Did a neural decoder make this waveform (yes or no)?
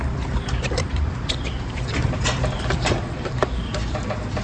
yes